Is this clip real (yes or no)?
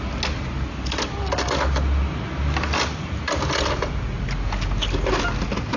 yes